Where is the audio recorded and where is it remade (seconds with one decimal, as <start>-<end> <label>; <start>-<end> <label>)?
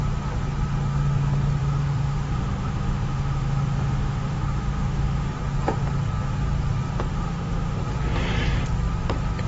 0.0-1.6 recorded; 1.6-5.3 remade; 5.3-7.1 recorded; 7.1-7.8 remade; 7.8-9.5 recorded